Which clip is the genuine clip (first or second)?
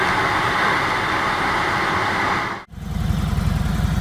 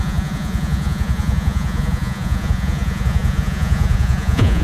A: first